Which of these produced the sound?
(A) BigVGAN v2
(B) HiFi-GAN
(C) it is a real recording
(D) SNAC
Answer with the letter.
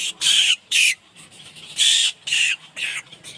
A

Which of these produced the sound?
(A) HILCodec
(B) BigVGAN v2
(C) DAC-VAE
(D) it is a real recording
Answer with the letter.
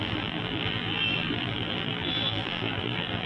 B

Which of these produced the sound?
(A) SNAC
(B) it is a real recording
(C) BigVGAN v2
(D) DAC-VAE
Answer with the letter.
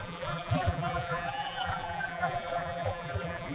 C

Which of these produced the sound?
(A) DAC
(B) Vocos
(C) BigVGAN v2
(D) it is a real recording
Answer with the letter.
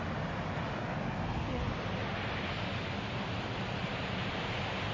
D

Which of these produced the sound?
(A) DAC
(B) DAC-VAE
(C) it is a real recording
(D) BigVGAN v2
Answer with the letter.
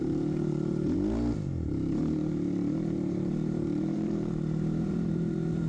D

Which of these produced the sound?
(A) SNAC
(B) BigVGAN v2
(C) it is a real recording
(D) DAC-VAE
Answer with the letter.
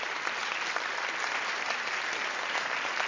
C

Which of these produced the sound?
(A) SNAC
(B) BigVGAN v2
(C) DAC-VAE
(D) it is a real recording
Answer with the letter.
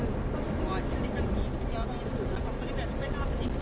D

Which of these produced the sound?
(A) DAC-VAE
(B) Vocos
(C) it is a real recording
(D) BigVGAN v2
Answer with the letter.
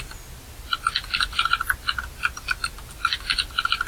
C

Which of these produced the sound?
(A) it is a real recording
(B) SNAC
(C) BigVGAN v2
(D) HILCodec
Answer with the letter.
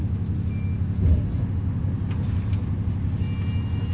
A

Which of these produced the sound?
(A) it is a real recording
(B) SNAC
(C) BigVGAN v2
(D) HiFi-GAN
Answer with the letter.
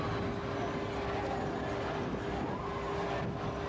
A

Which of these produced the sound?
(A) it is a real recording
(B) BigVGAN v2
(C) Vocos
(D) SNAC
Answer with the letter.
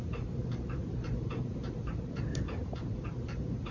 B